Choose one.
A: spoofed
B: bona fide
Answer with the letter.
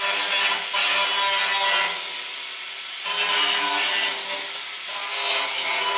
B